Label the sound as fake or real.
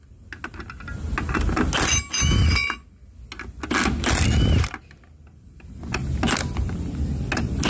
real